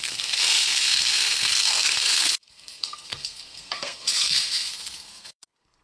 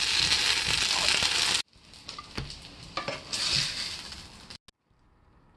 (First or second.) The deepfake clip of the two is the first